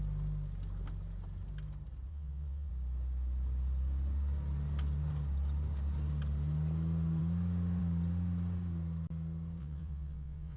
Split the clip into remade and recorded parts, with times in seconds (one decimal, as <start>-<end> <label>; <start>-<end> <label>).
0.0-2.1 recorded; 2.1-2.7 remade; 2.7-9.6 recorded; 9.6-10.6 remade